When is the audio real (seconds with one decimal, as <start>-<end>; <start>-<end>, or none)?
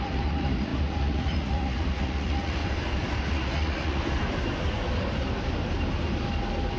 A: 2.6-3.2; 4.0-6.8